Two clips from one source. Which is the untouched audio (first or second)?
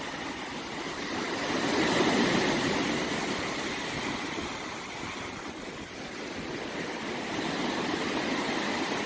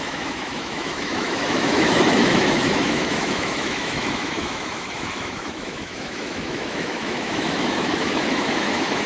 first